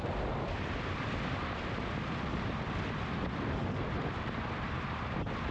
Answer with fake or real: fake